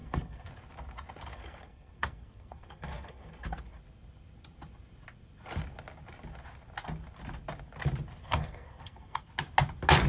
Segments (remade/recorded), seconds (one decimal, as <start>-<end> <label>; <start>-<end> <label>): 0.0-0.5 remade; 0.5-1.3 recorded; 1.3-3.6 remade; 3.6-8.2 recorded; 8.2-9.3 remade; 9.3-10.1 recorded

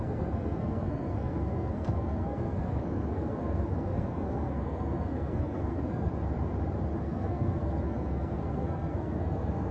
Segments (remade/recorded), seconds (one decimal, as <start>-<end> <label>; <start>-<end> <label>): 0.0-6.1 remade; 6.1-7.0 recorded; 7.0-9.7 remade

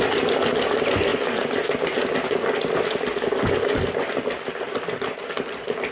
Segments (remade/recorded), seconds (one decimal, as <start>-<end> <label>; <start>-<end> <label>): 0.0-5.9 recorded

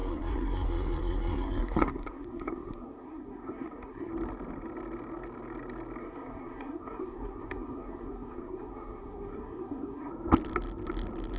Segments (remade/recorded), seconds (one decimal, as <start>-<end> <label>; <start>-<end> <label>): 0.0-4.1 remade; 4.1-6.0 recorded; 6.0-10.1 remade; 10.1-11.4 recorded